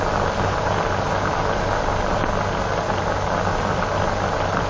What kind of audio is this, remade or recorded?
recorded